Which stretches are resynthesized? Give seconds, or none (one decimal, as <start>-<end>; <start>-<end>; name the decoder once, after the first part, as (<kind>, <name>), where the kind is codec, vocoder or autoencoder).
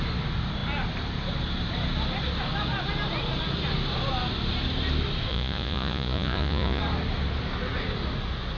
5.3-6.8 (vocoder, Vocos)